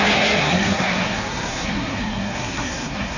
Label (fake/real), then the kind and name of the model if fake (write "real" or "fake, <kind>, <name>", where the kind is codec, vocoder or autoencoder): fake, codec, SNAC